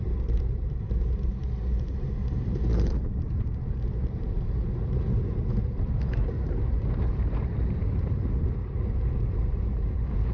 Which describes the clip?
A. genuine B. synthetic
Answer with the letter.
B